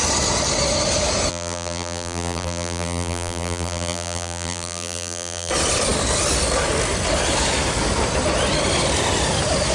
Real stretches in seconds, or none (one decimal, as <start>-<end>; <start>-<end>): 0.0-1.3; 5.5-9.7